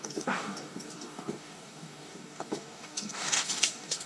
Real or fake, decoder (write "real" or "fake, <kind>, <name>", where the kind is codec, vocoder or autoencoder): fake, codec, DAC